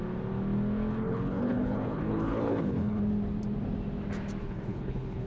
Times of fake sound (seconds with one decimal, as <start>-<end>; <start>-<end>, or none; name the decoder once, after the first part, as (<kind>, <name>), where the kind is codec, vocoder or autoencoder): 0.9-3.0 (codec, HILCodec); 4.4-5.3